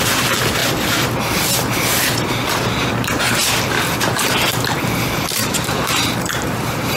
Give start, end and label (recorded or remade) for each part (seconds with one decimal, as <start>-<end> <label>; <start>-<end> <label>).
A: 0.0-5.4 recorded; 5.4-7.0 remade